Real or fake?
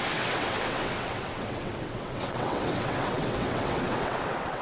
fake